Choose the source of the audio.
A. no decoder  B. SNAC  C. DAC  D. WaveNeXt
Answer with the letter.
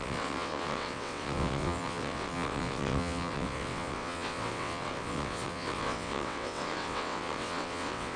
D